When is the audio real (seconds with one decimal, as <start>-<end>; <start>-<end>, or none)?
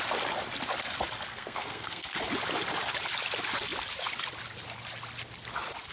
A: 0.0-1.3; 2.2-5.9